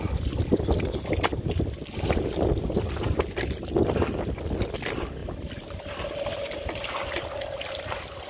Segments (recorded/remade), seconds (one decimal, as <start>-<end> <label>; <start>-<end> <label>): 0.0-8.3 recorded